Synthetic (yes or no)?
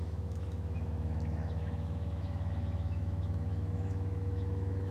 yes